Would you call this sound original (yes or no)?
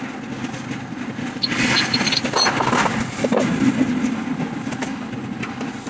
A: yes